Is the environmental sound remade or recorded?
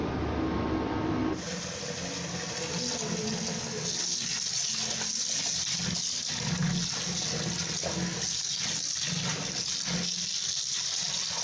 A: recorded